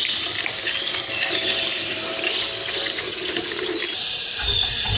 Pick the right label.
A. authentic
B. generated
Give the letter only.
A